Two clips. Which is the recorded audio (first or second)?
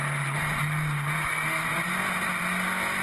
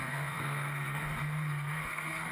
first